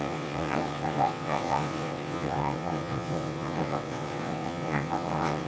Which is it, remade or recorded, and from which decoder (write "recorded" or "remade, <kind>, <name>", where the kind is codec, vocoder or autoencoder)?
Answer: remade, vocoder, WaveNeXt